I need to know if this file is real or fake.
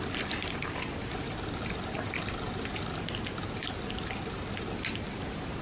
real